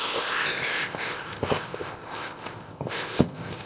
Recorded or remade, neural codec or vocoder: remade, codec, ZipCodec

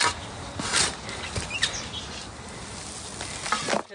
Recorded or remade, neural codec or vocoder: recorded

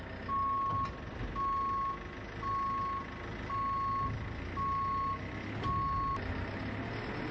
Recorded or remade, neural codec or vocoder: recorded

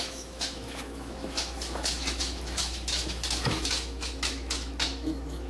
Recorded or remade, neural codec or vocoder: remade, autoencoder, DAC-VAE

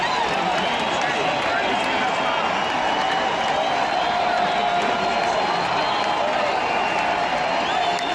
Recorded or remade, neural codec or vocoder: recorded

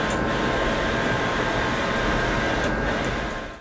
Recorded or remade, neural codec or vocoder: recorded